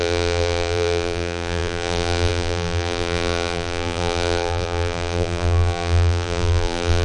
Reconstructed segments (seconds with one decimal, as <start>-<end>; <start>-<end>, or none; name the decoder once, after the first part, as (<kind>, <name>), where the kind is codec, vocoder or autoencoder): 0.0-7.0 (vocoder, BigVGAN v2)